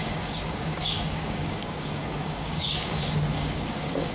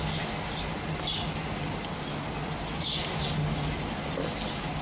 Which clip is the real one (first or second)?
second